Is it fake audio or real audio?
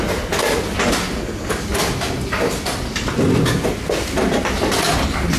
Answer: real